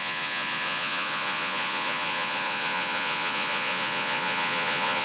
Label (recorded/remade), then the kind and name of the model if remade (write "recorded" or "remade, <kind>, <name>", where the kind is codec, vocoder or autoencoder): remade, vocoder, Vocos